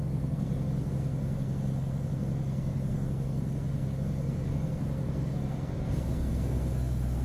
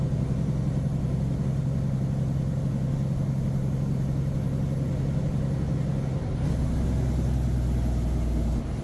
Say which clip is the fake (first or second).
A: first